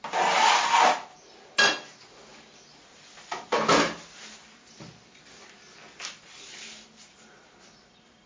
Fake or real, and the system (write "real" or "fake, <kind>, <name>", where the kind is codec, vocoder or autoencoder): real